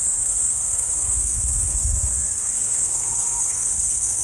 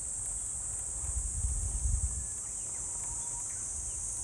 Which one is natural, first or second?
second